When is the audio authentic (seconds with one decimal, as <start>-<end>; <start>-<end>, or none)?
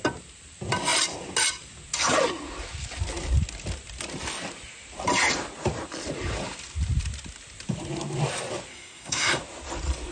0.0-8.7; 9.4-10.1